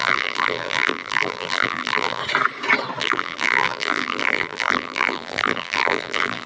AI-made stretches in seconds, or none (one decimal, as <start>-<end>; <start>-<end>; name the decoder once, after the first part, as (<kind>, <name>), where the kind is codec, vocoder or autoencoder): 0.0-2.2 (vocoder, BigVGAN v2); 3.0-6.5